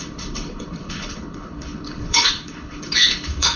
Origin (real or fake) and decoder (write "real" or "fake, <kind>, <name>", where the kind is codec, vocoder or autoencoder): fake, codec, HILCodec